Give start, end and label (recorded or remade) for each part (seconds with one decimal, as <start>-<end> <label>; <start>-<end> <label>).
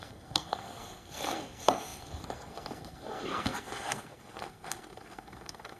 0.0-5.8 remade